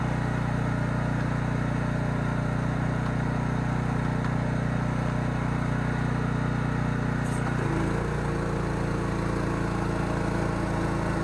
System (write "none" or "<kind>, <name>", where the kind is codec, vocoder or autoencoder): none